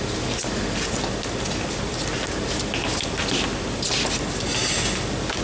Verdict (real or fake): real